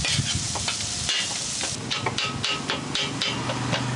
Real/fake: real